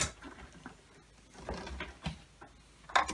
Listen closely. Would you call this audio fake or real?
real